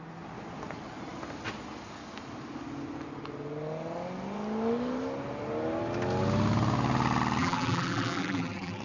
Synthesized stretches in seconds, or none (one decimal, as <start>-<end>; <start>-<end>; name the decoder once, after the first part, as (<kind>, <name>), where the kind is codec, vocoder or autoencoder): 7.4-8.8 (vocoder, BigVGAN v2)